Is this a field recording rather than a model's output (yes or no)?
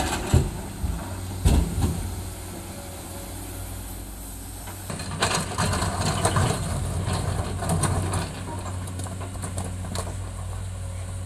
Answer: yes